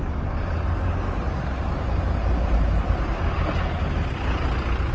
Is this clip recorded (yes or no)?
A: yes